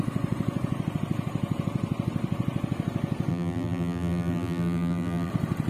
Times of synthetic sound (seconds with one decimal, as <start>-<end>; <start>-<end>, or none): 3.3-5.3